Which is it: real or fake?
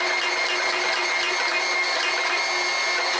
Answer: real